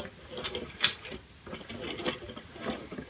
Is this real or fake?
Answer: real